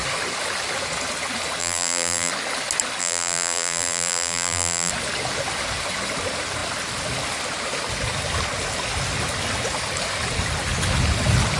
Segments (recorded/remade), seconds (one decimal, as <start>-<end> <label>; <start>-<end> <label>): 0.0-1.6 recorded; 1.6-2.3 remade; 2.3-3.0 recorded; 3.0-4.9 remade; 4.9-11.6 recorded